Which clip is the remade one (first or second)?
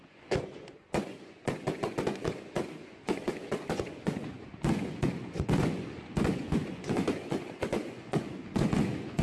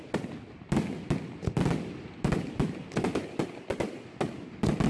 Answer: first